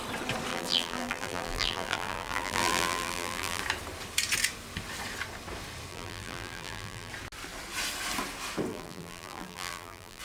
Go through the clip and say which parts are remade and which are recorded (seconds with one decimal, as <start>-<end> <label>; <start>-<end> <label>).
0.0-0.5 recorded; 0.5-3.6 remade; 3.6-5.9 recorded; 5.9-7.1 remade; 7.1-8.7 recorded; 8.7-10.2 remade